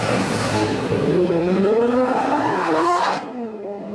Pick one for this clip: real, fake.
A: fake